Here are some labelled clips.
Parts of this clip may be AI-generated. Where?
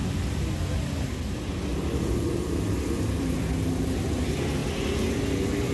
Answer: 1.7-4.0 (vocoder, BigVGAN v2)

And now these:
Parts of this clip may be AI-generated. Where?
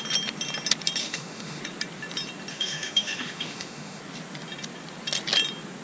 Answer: 1.0-1.6 (autoencoder, DAC-VAE); 2.5-4.0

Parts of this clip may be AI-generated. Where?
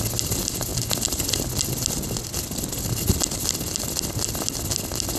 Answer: none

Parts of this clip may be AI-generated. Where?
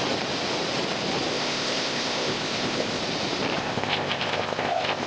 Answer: 1.3-3.0 (codec, ZipCodec); 3.6-5.1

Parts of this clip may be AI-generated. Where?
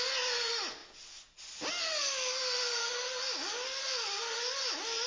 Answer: none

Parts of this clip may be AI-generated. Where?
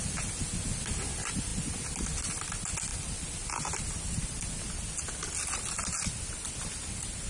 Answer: none